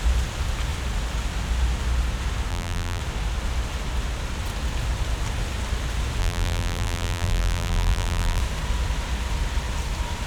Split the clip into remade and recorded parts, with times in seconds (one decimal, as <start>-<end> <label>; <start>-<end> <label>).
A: 0.0-2.5 recorded; 2.5-3.0 remade; 3.0-6.2 recorded; 6.2-8.4 remade; 8.4-10.3 recorded